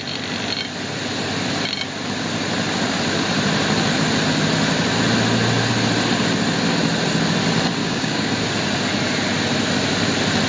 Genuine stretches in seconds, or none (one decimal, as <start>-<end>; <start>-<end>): 0.0-7.8; 8.3-10.5